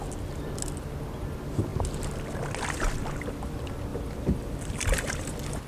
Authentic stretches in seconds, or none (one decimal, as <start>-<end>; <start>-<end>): 0.0-3.9; 5.3-5.7